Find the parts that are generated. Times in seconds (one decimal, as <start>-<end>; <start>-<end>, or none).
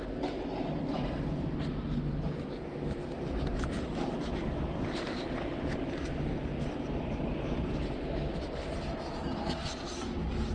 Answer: none